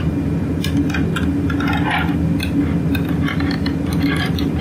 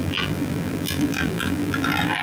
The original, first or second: first